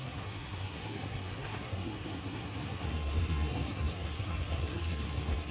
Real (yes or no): no